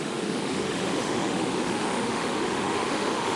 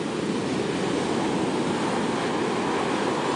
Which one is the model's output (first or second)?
first